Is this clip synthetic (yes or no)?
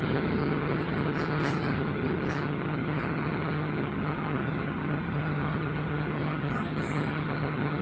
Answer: yes